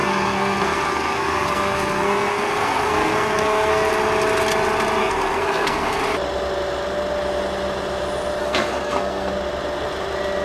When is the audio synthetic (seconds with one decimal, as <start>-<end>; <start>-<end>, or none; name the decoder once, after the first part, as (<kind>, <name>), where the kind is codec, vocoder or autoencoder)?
0.0-3.9 (codec, SNAC); 5.0-6.0; 8.4-9.3